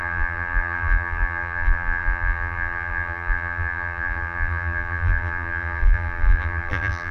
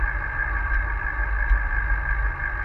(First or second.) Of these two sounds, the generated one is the first